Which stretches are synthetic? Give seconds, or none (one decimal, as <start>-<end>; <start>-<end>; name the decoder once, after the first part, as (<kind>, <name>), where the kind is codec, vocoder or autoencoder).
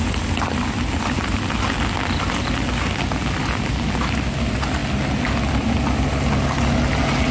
none